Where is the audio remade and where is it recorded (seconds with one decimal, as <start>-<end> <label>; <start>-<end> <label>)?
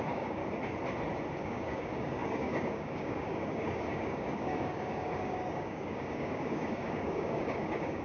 0.0-0.4 remade; 0.4-1.4 recorded; 1.4-8.0 remade